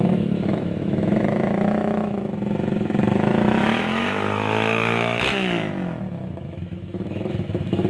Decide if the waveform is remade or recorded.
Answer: remade